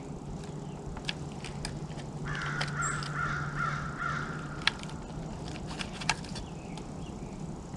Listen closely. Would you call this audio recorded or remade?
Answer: recorded